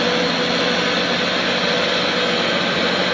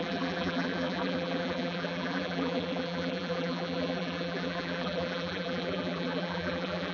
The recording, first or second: first